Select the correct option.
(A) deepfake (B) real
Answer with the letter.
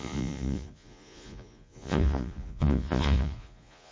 A